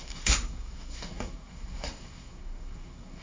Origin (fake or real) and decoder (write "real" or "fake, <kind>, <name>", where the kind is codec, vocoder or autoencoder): fake, codec, SNAC